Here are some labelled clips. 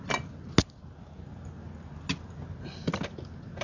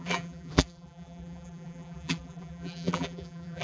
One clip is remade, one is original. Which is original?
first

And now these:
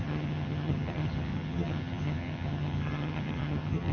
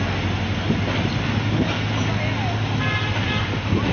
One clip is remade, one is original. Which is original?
second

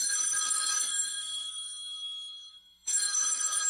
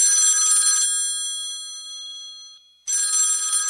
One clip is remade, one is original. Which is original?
second